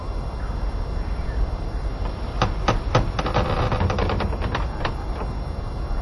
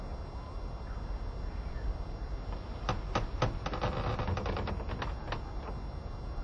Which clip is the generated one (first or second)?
first